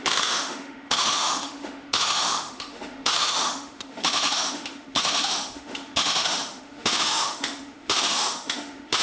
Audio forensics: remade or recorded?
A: remade